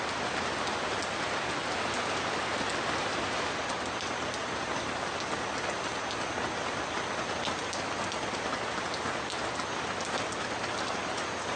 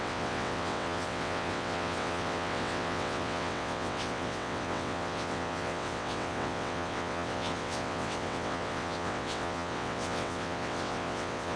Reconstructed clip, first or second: second